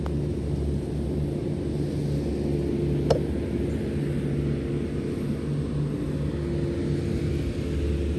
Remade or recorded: recorded